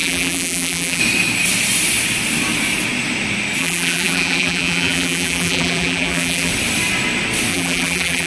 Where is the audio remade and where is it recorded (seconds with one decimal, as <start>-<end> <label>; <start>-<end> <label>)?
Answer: 0.0-1.0 remade; 1.0-3.6 recorded; 3.6-6.5 remade; 6.5-7.5 recorded; 7.5-8.3 remade